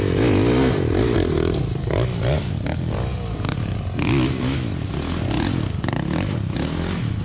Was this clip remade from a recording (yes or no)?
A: no